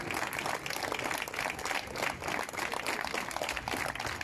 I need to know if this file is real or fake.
real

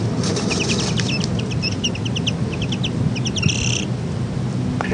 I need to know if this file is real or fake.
real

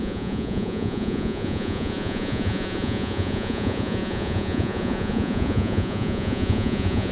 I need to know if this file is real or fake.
fake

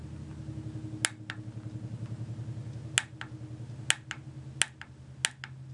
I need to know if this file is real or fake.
real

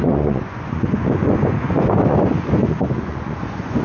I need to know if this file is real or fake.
fake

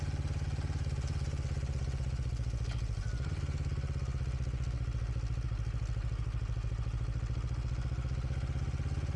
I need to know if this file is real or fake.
real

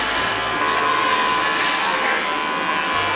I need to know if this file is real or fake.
real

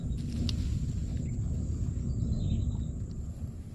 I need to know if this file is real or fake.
real